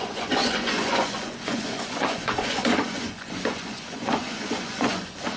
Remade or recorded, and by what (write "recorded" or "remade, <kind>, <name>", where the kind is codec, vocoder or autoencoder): remade, vocoder, Vocos